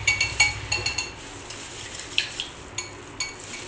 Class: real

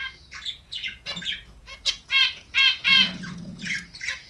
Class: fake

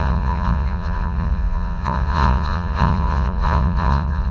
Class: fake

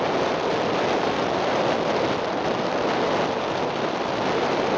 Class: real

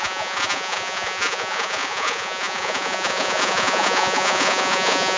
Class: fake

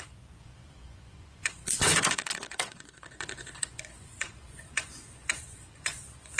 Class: fake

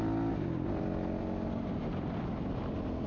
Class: real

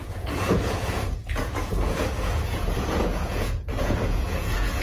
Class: fake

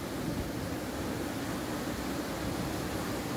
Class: real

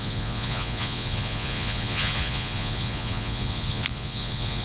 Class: fake